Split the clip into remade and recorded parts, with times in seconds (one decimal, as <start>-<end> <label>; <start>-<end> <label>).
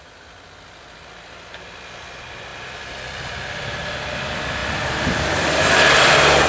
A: 0.0-6.5 recorded